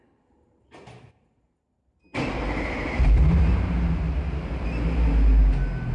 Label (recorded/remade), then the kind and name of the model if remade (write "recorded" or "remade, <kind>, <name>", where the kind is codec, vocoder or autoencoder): recorded